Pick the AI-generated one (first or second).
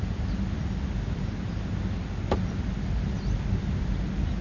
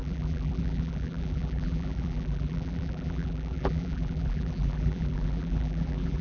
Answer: second